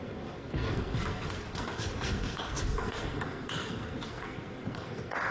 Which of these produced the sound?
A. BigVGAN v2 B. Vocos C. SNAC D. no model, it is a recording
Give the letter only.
C